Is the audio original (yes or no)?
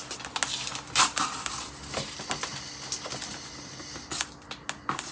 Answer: yes